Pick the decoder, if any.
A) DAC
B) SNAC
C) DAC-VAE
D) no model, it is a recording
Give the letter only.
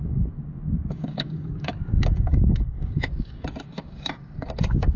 A